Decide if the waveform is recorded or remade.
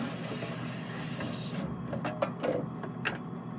recorded